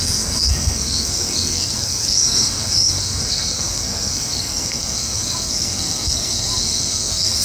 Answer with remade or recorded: remade